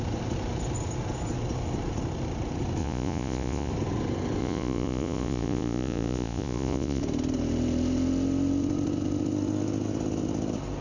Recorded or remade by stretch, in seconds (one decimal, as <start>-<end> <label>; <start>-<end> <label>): 0.0-2.8 recorded; 2.8-3.7 remade; 3.7-4.4 recorded; 4.4-7.0 remade; 7.0-10.8 recorded